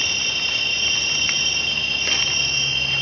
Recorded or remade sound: recorded